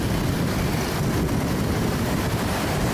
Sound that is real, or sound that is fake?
real